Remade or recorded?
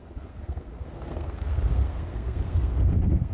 remade